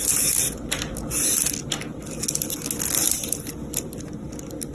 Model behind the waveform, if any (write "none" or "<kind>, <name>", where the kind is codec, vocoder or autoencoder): none